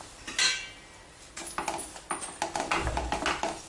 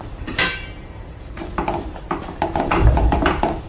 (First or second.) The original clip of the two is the first